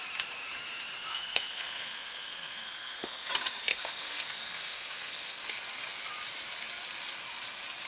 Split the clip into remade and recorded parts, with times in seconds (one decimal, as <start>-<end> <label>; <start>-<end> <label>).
0.0-1.1 recorded; 1.1-3.3 remade; 3.3-3.7 recorded; 3.7-5.4 remade; 5.4-7.9 recorded